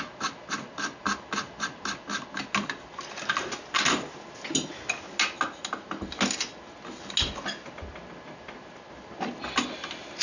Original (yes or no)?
yes